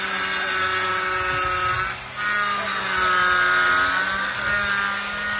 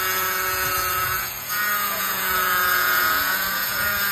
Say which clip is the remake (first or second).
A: second